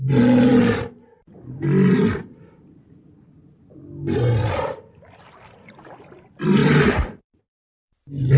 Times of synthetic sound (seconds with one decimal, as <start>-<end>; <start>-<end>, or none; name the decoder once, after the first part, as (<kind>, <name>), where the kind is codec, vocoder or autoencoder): none